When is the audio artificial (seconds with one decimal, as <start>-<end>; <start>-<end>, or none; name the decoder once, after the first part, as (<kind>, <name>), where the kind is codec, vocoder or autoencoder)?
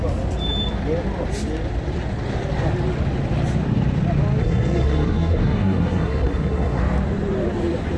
4.4-6.8 (codec, SNAC)